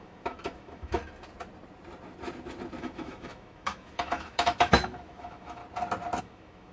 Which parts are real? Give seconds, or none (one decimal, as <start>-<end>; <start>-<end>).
1.0-2.8; 5.6-6.2